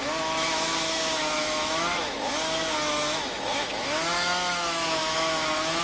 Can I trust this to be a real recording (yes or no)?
no